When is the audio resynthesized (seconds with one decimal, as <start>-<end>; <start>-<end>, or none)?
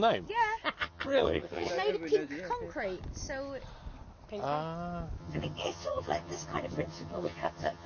0.8-1.7; 5.2-7.9